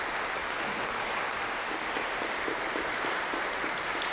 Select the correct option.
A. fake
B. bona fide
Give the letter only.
B